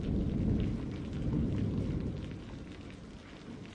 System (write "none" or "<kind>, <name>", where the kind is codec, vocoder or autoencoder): none